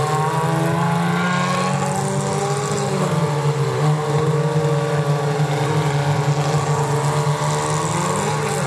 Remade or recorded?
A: recorded